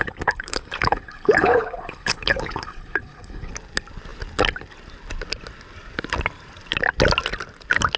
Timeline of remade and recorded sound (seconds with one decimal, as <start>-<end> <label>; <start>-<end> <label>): 0.0-3.5 remade; 3.5-8.0 recorded

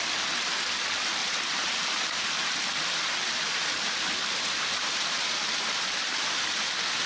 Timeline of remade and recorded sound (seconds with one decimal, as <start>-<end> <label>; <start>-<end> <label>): 0.0-7.1 recorded

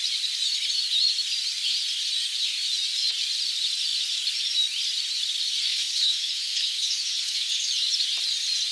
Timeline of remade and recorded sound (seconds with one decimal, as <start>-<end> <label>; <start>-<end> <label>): 0.0-5.7 recorded; 5.7-7.7 remade; 7.7-8.7 recorded

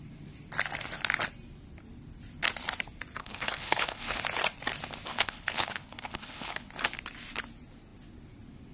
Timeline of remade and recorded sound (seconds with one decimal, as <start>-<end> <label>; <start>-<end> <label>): 0.0-3.2 recorded; 3.2-4.2 remade; 4.2-5.1 recorded; 5.1-6.7 remade; 6.7-8.7 recorded